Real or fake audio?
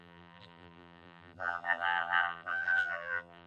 fake